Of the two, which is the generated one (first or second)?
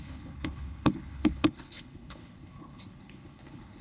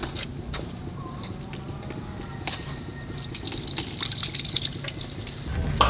first